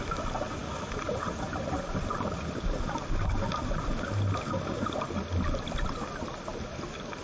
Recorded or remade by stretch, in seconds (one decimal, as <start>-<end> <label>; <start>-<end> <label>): 0.0-7.2 recorded